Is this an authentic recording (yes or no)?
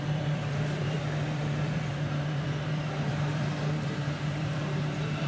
no